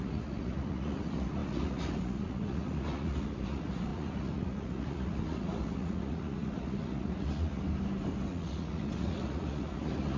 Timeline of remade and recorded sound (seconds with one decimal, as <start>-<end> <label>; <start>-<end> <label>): 0.0-7.6 remade; 7.6-8.3 recorded; 8.3-10.2 remade